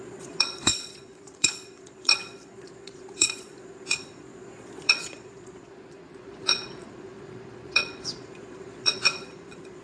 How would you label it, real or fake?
fake